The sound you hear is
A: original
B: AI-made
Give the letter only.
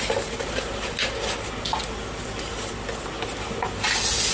A